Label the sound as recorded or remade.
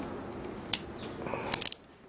recorded